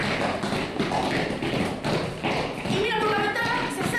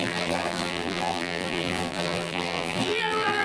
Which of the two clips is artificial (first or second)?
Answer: second